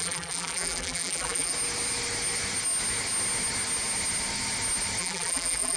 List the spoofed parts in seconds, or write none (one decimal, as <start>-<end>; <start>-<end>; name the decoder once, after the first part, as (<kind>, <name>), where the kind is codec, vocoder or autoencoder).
0.0-1.5 (vocoder, BigVGAN v2); 5.0-5.8